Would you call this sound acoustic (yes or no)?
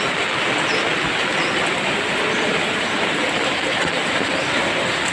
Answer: yes